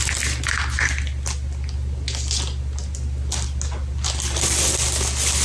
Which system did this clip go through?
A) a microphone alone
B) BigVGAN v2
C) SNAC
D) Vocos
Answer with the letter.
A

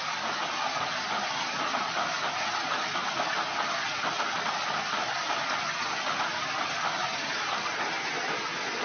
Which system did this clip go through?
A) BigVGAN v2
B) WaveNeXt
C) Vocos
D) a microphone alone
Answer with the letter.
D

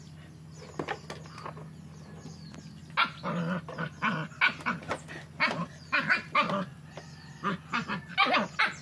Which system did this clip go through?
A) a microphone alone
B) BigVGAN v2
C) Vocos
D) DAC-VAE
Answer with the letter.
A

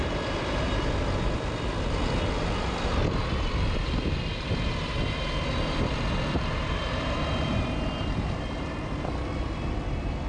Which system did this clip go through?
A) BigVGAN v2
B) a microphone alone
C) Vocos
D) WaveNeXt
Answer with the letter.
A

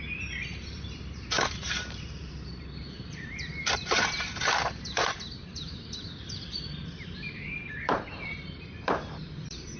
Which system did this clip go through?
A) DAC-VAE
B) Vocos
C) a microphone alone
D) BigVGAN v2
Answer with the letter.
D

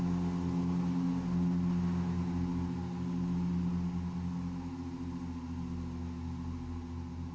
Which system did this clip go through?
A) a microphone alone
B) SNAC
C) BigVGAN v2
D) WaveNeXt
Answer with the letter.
A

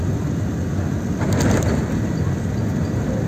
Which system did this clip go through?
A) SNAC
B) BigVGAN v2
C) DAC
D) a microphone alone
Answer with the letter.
D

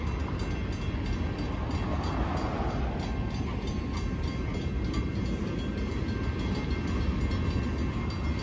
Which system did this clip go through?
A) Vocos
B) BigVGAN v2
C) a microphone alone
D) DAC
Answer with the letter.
C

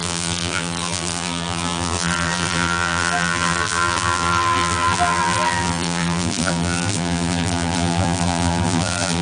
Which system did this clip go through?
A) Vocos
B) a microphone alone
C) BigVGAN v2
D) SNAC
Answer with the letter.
C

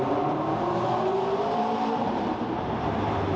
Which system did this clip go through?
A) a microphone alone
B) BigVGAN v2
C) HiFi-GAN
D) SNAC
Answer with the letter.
B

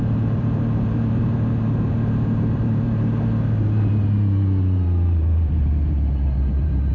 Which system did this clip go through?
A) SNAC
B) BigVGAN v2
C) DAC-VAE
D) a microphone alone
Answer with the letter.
B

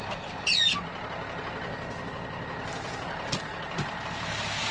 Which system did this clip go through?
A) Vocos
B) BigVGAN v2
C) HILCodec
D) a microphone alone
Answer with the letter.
D